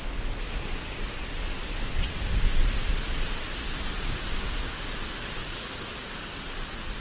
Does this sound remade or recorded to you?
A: recorded